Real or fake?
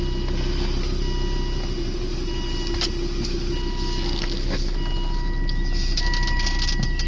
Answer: real